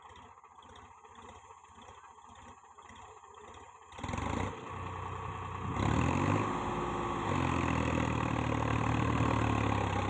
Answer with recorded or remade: recorded